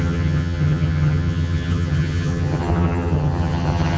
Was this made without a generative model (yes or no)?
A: no